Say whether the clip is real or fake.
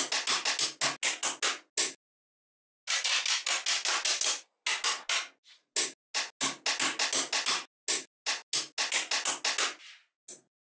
real